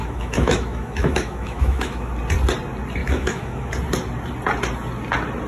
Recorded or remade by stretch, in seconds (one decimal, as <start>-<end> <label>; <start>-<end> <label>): 0.0-2.1 remade; 2.1-3.0 recorded; 3.0-3.7 remade; 3.7-5.5 recorded